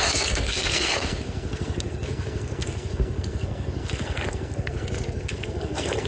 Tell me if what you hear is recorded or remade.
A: remade